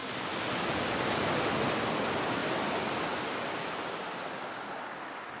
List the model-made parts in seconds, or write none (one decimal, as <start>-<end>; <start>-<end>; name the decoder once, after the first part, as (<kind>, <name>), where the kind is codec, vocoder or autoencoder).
none